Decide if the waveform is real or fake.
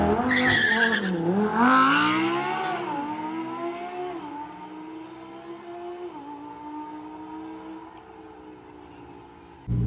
real